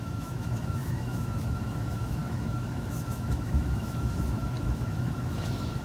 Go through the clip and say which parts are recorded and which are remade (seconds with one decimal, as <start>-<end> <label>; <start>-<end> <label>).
0.0-5.8 remade